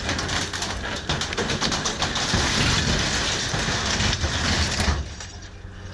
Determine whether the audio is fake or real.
real